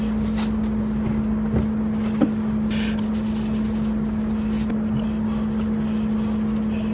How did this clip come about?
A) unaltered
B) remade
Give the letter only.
A